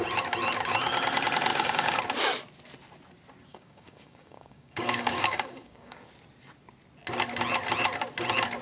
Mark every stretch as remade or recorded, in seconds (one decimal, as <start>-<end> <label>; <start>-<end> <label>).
0.0-1.5 recorded; 1.5-2.0 remade; 2.0-3.5 recorded; 3.5-6.1 remade; 6.1-8.6 recorded